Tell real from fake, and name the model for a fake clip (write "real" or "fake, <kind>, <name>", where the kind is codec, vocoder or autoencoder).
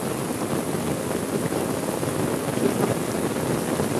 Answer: real